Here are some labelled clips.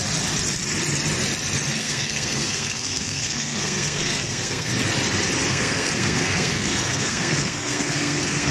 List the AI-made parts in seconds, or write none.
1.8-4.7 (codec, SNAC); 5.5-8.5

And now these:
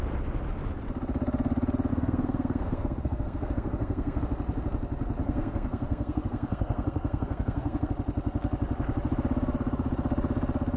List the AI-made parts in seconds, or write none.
1.9-4.2 (codec, SNAC); 5.2-7.9

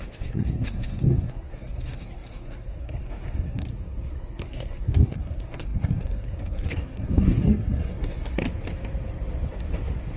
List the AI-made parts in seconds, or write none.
0.0-8.4 (codec, SNAC)

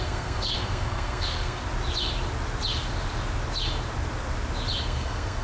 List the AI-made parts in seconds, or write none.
0.0-1.6 (codec, SNAC); 4.8-5.4

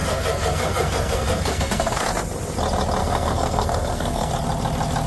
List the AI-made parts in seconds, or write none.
0.0-2.1 (codec, SNAC); 3.0-4.3